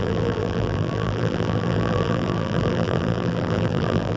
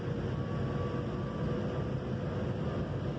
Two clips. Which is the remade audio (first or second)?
first